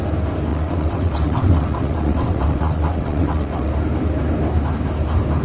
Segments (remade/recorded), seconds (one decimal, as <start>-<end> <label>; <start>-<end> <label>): 0.0-0.5 recorded; 0.5-3.7 remade; 3.7-5.4 recorded